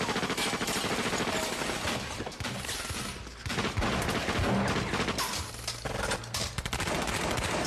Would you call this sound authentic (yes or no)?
yes